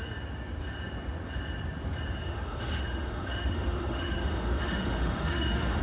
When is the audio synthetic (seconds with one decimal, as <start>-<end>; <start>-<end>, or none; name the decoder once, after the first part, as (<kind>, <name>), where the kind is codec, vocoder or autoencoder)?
2.2-5.8 (autoencoder, DAC-VAE)